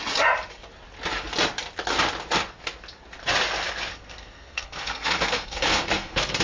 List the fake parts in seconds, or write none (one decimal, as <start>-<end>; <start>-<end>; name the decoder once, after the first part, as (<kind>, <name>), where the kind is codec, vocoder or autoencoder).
3.9-6.4 (codec, SNAC)